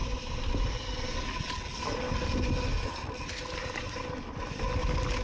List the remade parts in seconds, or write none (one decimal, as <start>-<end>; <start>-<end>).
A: 0.0-1.0; 2.7-3.9